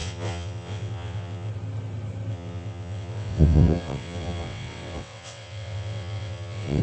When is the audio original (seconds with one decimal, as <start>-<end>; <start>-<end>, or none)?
1.5-2.3